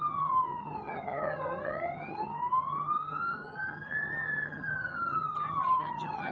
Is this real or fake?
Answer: fake